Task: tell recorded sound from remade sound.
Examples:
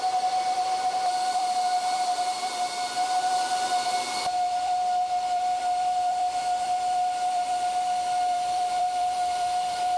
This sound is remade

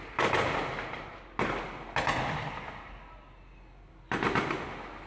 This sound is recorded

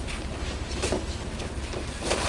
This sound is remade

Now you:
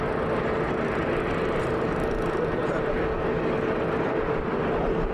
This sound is recorded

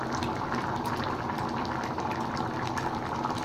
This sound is recorded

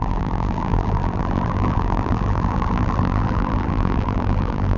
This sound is remade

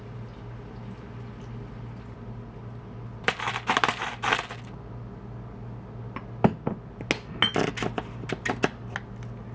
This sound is recorded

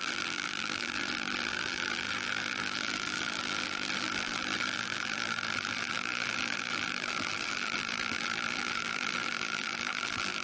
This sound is remade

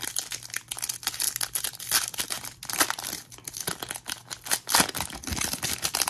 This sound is recorded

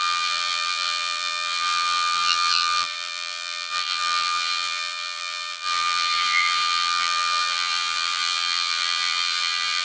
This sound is remade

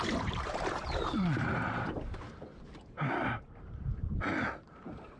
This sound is remade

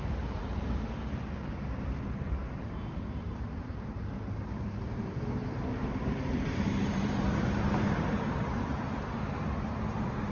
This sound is remade